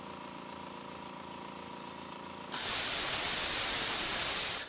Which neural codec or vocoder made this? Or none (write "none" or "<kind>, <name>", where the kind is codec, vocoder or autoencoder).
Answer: none